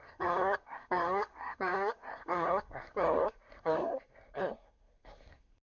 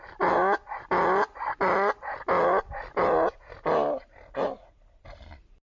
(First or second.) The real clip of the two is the second